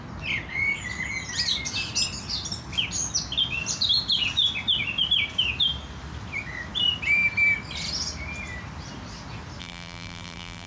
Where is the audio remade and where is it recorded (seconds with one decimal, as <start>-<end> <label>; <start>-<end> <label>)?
0.0-9.6 recorded; 9.6-10.7 remade